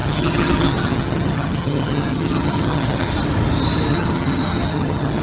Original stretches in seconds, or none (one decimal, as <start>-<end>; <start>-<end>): 3.1-3.9